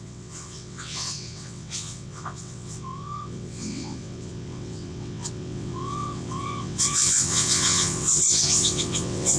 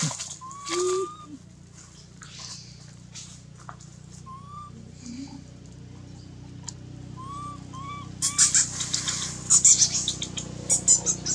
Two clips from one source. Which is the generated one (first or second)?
first